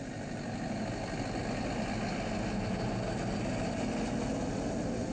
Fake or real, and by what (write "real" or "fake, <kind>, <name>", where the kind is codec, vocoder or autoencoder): real